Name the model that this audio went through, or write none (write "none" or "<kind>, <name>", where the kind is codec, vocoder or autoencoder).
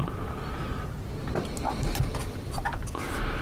none